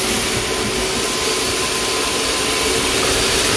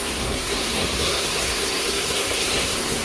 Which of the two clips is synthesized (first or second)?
second